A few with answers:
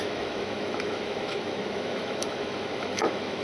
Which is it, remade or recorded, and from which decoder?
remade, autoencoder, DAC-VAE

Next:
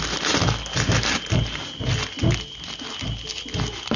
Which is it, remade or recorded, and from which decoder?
recorded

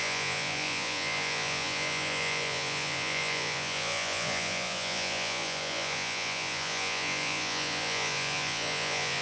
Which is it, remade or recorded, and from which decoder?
remade, vocoder, Vocos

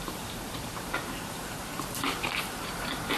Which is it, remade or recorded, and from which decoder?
remade, vocoder, BigVGAN v2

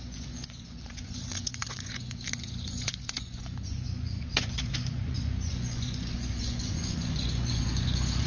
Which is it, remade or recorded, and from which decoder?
remade, vocoder, Vocos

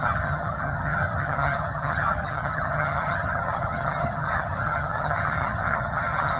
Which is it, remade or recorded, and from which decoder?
remade, vocoder, HiFi-GAN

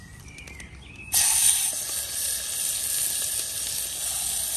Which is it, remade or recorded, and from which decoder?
recorded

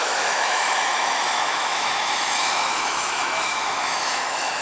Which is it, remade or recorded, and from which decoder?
remade, autoencoder, DAC-VAE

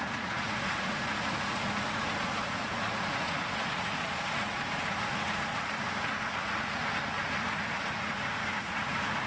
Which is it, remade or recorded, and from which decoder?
remade, vocoder, Vocos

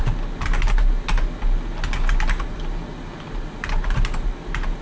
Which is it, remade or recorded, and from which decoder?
recorded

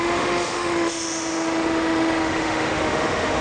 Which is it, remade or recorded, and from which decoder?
remade, autoencoder, DAC-VAE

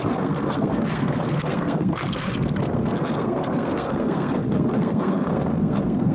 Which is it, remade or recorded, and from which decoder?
remade, codec, SNAC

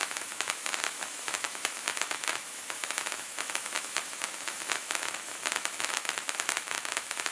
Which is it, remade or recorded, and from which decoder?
remade, autoencoder, DAC-VAE